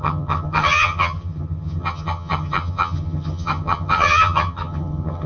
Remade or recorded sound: remade